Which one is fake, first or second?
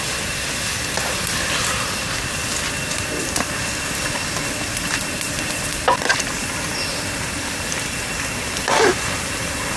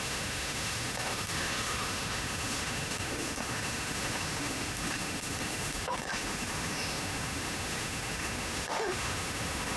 second